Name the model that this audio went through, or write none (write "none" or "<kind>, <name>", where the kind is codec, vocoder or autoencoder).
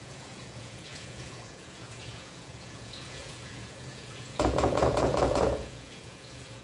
vocoder, Vocos